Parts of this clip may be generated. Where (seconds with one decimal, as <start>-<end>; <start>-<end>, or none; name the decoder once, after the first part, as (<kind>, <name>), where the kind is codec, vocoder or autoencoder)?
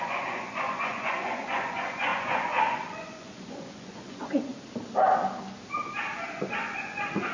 0.0-4.5 (vocoder, Vocos); 6.5-7.3